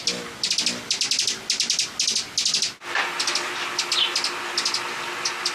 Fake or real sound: real